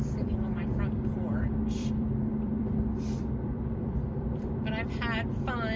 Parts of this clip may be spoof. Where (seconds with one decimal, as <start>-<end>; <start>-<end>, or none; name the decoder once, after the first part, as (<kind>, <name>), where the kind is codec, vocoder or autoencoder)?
1.8-4.5 (vocoder, BigVGAN v2)